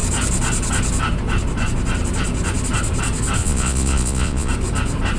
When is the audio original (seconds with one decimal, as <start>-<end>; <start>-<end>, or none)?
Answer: 0.0-3.4; 4.5-5.2

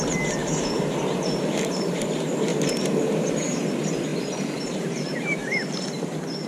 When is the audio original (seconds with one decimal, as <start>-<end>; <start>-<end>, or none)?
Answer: 0.0-0.4; 2.0-2.5; 3.3-4.1; 6.0-6.5